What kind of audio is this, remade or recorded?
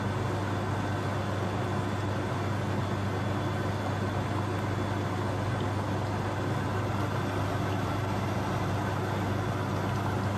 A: recorded